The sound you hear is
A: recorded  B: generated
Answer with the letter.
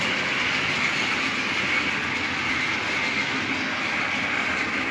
A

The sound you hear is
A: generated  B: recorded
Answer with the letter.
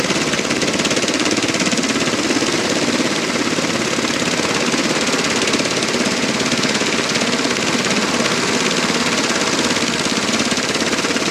B